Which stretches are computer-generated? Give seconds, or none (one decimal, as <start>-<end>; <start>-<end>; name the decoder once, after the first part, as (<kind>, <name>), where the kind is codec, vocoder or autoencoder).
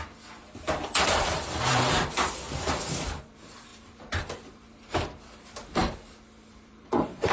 0.0-5.8 (vocoder, BigVGAN v2); 6.5-7.3